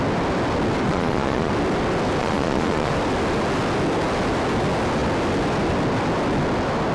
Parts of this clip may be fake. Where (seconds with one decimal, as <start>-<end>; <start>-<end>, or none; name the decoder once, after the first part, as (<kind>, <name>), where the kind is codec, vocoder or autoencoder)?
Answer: 0.9-1.5 (vocoder, Vocos); 2.2-2.9